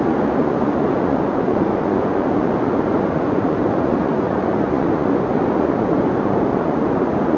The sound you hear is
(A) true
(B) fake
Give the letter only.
B